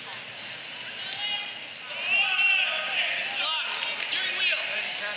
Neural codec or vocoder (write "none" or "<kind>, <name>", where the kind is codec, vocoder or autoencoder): none